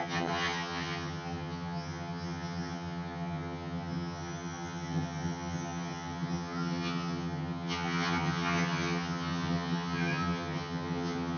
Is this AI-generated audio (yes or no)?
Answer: yes